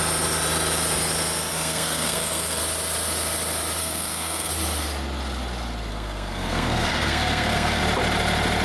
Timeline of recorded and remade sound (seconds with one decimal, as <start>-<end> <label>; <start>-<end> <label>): 0.0-1.5 recorded; 1.5-2.6 remade; 2.6-3.8 recorded; 3.8-4.5 remade; 4.5-5.9 recorded; 5.9-7.8 remade; 7.8-8.6 recorded